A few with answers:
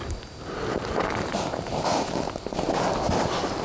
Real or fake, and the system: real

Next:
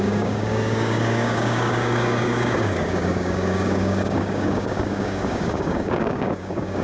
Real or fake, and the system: fake, codec, DAC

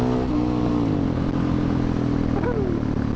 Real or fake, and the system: real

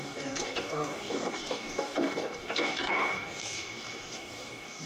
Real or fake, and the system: fake, codec, DAC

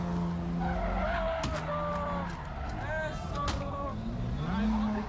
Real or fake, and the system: real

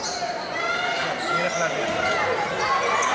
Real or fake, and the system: real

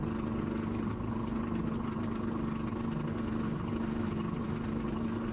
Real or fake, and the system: real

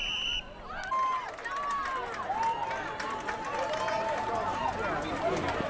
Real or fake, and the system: real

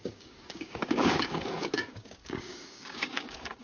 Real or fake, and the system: fake, codec, DAC